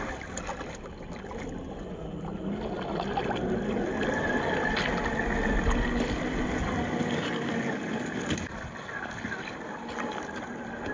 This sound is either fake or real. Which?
real